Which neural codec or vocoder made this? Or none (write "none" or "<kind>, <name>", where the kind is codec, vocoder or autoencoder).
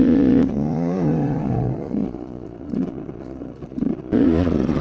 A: vocoder, Vocos